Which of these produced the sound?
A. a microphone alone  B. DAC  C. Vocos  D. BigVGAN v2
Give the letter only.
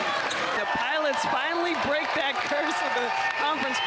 A